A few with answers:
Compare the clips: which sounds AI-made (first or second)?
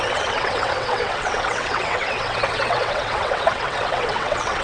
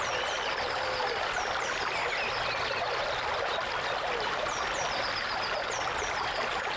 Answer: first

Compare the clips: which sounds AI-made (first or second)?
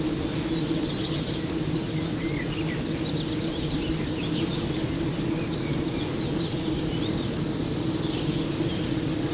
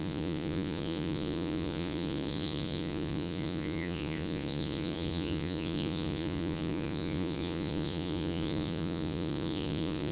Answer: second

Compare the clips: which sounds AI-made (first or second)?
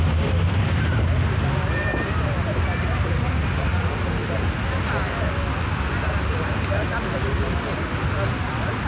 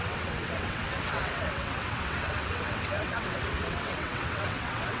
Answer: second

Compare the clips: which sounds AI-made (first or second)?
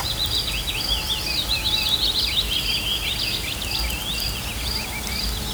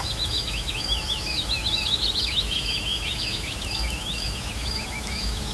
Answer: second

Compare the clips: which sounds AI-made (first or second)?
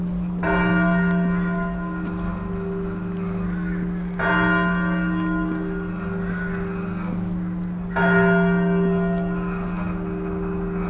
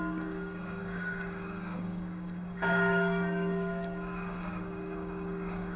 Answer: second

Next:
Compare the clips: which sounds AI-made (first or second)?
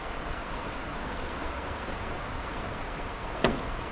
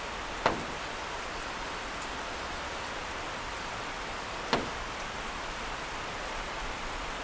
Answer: first